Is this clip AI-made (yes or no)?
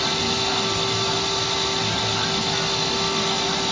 no